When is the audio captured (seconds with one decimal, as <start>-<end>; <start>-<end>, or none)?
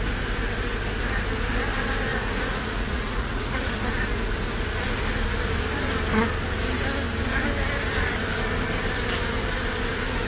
0.0-2.1; 3.7-10.3